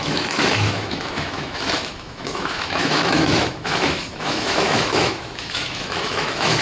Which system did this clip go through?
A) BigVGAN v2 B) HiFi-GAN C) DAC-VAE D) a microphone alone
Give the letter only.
C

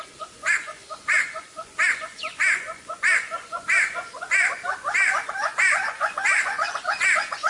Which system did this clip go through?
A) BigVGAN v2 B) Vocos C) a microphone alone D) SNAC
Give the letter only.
B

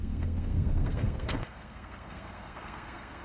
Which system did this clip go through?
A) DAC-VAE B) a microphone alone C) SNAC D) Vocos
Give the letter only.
C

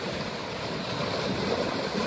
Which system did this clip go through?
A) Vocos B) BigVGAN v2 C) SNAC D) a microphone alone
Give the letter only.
D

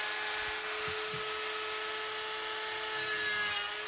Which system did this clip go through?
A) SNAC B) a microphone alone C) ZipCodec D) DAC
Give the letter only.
B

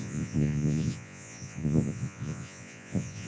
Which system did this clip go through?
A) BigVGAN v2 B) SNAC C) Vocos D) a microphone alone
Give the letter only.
C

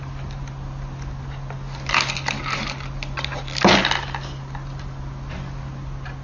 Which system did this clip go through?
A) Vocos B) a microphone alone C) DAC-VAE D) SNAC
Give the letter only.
B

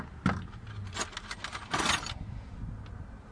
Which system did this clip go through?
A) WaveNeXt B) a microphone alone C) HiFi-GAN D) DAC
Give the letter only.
B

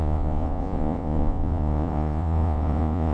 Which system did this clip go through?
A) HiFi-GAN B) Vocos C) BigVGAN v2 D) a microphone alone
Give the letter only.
B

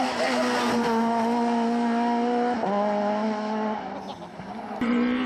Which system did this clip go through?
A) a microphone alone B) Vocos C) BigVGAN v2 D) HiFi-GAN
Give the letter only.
A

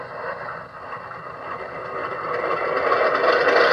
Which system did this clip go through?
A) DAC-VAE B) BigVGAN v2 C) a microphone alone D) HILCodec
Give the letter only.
C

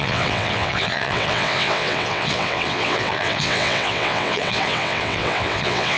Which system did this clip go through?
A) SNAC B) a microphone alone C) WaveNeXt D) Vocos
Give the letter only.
C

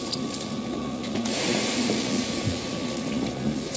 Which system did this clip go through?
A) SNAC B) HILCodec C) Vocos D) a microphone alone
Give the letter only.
C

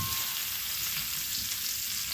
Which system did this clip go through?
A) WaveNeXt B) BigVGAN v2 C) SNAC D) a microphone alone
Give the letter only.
D